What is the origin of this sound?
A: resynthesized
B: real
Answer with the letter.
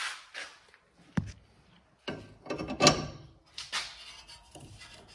B